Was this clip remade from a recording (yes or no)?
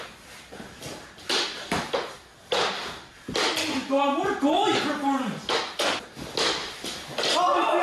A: no